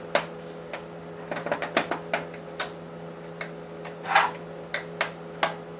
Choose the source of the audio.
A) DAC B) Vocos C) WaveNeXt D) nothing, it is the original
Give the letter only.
D